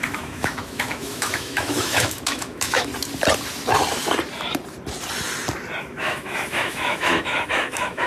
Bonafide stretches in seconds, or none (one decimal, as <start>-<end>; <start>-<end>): 2.9-5.8